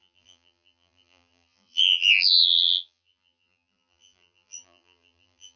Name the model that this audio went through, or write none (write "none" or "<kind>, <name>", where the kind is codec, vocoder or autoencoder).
vocoder, BigVGAN v2